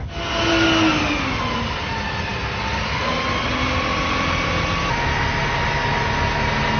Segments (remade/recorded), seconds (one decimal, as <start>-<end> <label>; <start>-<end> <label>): 0.0-6.8 recorded